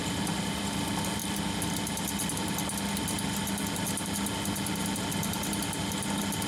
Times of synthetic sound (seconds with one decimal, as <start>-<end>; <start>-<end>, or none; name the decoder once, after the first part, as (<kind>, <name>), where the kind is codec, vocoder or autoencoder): none